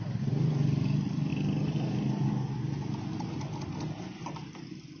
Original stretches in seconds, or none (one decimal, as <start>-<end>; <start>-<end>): 0.0-5.0